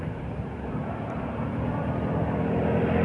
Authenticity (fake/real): real